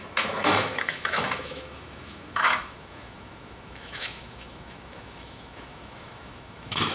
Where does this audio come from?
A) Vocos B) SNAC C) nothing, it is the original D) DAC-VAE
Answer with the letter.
D